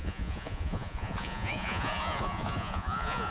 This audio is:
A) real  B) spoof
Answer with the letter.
B